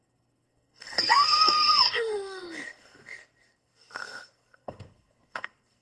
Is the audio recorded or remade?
remade